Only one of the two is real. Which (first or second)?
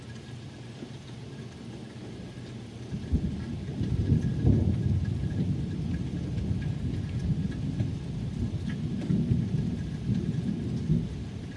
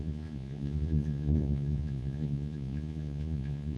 first